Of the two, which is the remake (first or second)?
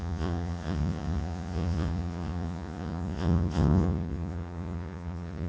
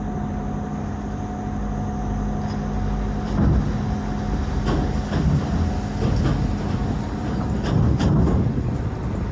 first